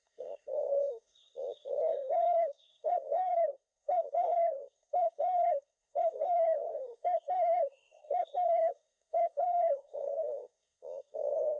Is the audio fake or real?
fake